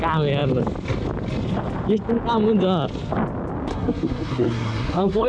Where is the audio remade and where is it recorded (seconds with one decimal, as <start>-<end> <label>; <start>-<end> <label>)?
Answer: 0.0-3.7 recorded; 3.7-5.3 remade